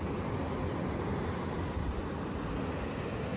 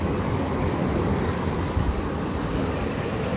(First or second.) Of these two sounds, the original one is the first